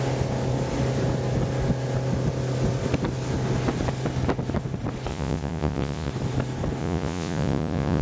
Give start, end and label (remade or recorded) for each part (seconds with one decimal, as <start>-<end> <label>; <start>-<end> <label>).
0.0-5.1 recorded; 5.1-6.1 remade; 6.1-6.8 recorded; 6.8-8.0 remade